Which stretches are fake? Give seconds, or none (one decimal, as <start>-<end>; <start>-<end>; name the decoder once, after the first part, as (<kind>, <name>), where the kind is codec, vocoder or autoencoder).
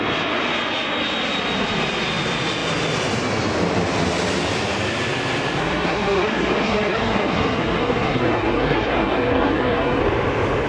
5.6-10.0 (codec, SNAC)